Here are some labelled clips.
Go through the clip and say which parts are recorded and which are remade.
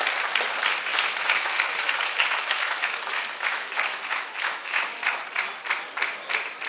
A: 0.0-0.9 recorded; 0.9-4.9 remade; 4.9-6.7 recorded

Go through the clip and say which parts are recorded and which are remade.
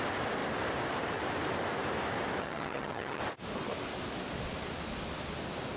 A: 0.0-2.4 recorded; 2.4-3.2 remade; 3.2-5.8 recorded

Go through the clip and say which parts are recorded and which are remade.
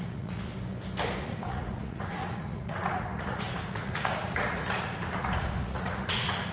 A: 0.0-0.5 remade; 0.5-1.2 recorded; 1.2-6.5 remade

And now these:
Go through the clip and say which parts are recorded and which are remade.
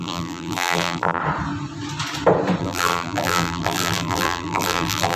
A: 0.0-1.2 remade; 1.2-2.6 recorded; 2.6-5.2 remade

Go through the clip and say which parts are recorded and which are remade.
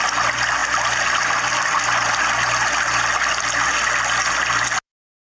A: 0.0-5.2 recorded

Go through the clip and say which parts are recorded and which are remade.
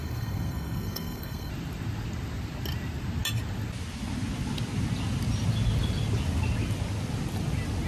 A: 0.0-1.5 remade; 1.5-7.9 recorded